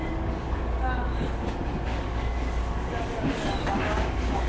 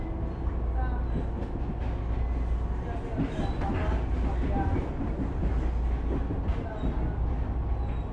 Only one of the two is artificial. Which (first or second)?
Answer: first